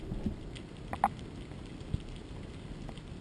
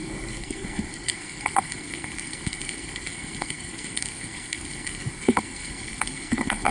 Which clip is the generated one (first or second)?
second